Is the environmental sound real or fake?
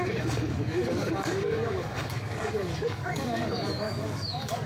fake